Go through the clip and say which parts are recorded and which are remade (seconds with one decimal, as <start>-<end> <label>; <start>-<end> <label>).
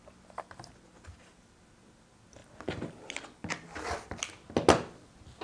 0.0-5.4 recorded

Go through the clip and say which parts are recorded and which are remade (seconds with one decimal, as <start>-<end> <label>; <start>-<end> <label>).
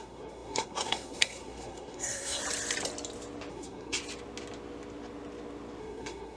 0.0-2.4 remade; 2.4-3.5 recorded; 3.5-4.0 remade; 4.0-5.8 recorded; 5.8-6.4 remade